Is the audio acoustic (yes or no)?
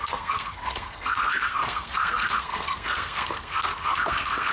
no